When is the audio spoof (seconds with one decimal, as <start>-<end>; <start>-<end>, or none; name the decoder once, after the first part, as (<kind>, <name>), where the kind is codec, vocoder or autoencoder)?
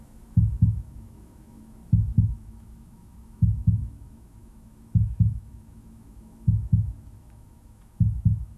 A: 0.0-1.8 (autoencoder, DAC-VAE); 2.3-8.6